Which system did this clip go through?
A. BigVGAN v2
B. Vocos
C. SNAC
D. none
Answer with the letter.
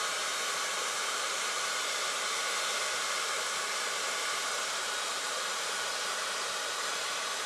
A